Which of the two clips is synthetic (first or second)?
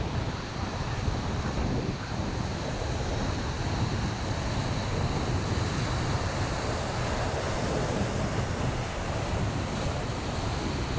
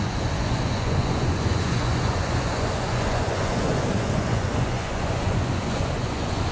second